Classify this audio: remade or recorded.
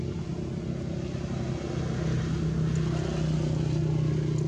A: recorded